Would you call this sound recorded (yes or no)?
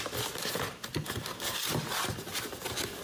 yes